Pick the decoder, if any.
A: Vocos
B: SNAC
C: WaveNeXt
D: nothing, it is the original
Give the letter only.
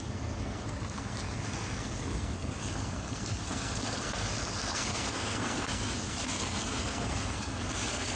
B